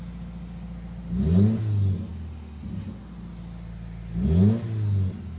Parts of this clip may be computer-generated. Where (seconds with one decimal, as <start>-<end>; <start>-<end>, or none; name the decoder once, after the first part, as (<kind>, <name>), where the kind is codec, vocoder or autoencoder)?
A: none